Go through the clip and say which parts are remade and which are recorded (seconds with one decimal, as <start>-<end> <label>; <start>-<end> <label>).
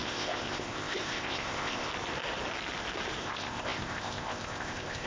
0.0-1.9 remade; 1.9-3.2 recorded; 3.2-5.1 remade